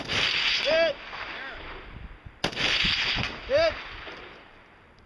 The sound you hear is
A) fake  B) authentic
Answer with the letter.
B